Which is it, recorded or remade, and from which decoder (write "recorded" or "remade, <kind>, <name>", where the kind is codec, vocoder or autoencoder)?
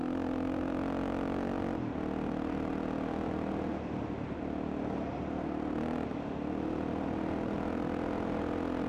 recorded